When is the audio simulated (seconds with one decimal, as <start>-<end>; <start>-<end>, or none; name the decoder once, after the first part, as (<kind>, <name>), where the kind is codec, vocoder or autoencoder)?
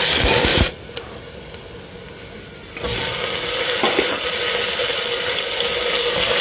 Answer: 0.5-1.0 (vocoder, BigVGAN v2)